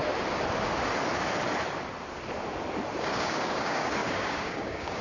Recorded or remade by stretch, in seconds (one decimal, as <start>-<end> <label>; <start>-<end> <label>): 0.0-3.0 recorded; 3.0-5.0 remade